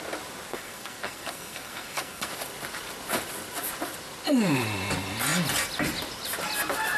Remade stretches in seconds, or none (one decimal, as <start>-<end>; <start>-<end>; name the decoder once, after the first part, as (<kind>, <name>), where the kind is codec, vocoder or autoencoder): 0.5-2.3 (codec, SNAC)